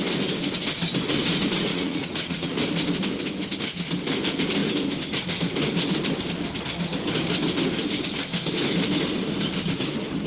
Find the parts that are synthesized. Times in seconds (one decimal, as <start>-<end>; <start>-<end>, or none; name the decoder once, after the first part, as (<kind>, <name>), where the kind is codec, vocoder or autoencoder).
1.7-2.6 (vocoder, Vocos)